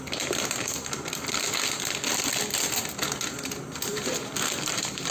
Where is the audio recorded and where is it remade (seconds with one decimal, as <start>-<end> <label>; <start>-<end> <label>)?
0.0-3.9 recorded; 3.9-5.1 remade